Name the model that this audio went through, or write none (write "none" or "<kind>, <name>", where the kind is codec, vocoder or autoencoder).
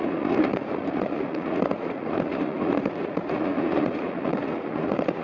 vocoder, Vocos